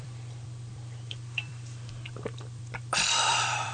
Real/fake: fake